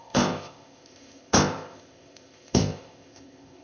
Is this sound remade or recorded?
remade